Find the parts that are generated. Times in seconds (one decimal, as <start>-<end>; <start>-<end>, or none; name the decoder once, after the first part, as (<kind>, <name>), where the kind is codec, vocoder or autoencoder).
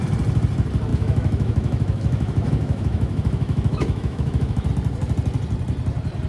0.9-4.7 (autoencoder, DAC-VAE)